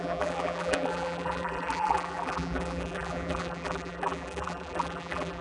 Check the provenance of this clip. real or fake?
fake